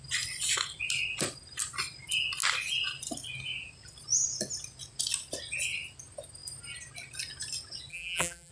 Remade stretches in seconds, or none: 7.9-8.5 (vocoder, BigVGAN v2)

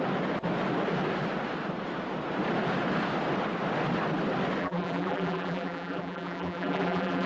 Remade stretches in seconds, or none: 4.6-7.3 (vocoder, BigVGAN v2)

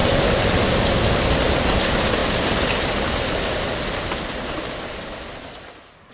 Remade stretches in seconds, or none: 0.0-0.6 (vocoder, BigVGAN v2)

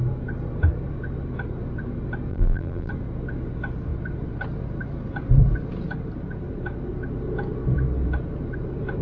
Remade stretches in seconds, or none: 2.3-2.9 (vocoder, BigVGAN v2)

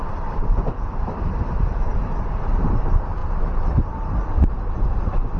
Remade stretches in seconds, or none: 0.0-1.2 (vocoder, BigVGAN v2); 3.2-4.9

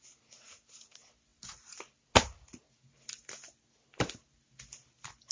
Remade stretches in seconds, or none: none

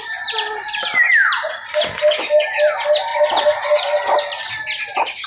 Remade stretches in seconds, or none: 3.1-3.8 (vocoder, BigVGAN v2)